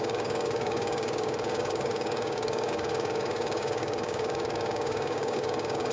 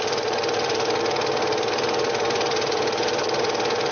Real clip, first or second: second